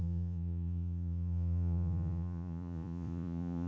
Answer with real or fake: fake